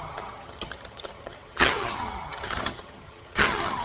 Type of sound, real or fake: fake